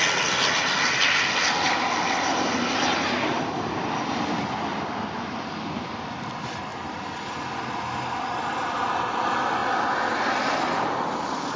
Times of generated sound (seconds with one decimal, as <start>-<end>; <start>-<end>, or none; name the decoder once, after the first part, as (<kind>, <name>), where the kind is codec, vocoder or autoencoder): none